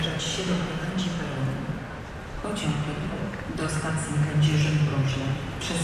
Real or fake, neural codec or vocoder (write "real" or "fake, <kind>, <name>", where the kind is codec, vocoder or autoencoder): real